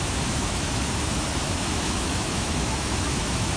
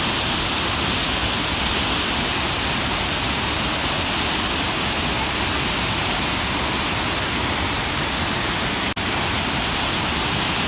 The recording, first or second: second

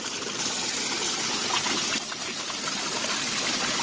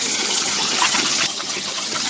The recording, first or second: first